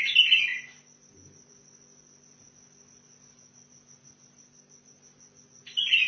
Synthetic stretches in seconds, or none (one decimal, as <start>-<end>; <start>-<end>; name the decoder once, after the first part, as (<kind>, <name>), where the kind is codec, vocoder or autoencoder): none

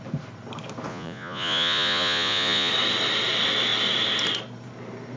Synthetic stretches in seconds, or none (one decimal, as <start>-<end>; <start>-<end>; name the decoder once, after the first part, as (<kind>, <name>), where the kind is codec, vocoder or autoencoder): 0.9-2.7 (vocoder, Vocos)